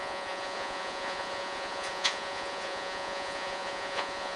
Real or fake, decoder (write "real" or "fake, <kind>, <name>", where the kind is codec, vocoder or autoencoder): fake, vocoder, Vocos